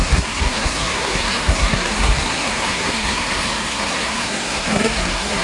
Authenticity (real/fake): fake